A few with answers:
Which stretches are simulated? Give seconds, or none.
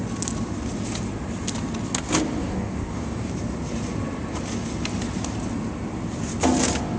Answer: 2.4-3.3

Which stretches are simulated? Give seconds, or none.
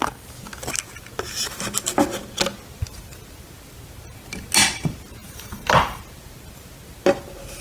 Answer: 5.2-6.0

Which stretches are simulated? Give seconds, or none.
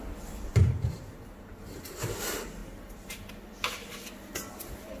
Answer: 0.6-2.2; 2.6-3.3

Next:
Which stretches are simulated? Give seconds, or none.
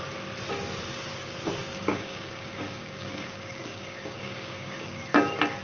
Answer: 1.6-5.0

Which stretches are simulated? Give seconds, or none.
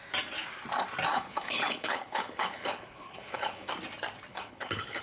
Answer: 1.1-3.7; 4.3-5.0